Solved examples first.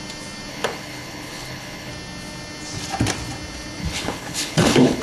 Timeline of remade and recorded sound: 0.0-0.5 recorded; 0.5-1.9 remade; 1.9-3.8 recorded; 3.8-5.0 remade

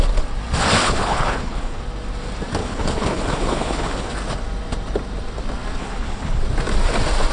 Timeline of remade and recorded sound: 0.0-0.8 recorded; 0.8-1.8 remade; 1.8-2.6 recorded; 2.6-4.1 remade; 4.1-5.8 recorded; 5.8-6.4 remade; 6.4-7.3 recorded

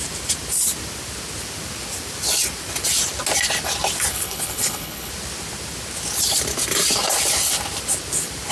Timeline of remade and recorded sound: 0.0-4.1 recorded; 4.1-5.1 remade; 5.1-8.5 recorded

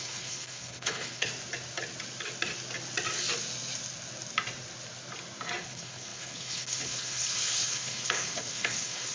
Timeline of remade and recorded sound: 0.0-1.3 remade; 1.3-5.6 recorded; 5.6-9.1 remade

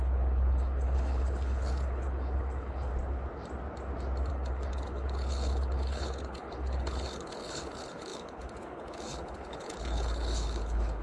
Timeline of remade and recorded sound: 0.0-2.9 remade; 2.9-4.3 recorded; 4.3-11.0 remade

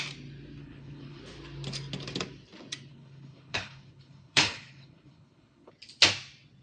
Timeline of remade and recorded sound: 0.0-0.6 recorded; 0.6-1.2 remade; 1.2-2.9 recorded; 2.9-5.7 remade; 5.7-6.6 recorded

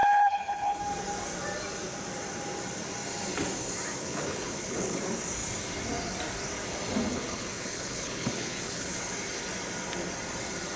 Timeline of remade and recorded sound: 0.0-0.8 remade; 0.8-4.0 recorded; 4.0-5.0 remade; 5.0-7.1 recorded; 7.1-9.0 remade; 9.0-10.8 recorded